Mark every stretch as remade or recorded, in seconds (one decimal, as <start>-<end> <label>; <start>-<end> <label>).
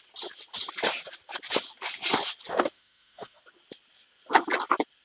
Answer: 0.0-2.5 recorded; 2.5-3.4 remade; 3.4-5.0 recorded